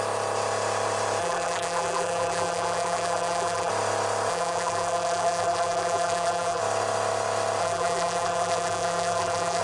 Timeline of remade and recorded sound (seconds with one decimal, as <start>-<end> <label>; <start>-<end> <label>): 0.0-1.2 recorded; 1.2-3.7 remade; 3.7-4.3 recorded; 4.3-6.6 remade; 6.6-7.6 recorded; 7.6-9.6 remade